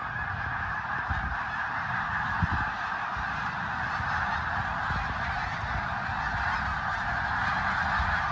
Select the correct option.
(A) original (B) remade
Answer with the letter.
A